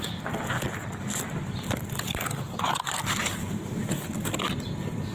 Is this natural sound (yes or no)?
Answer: yes